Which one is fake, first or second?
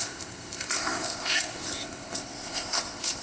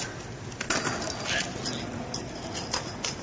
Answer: first